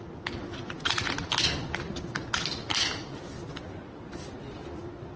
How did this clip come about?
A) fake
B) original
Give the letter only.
B